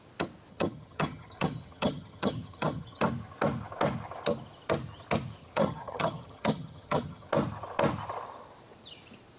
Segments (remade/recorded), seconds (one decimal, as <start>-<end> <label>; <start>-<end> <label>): 0.0-0.5 recorded; 0.5-3.0 remade; 3.0-5.4 recorded; 5.4-7.3 remade; 7.3-9.4 recorded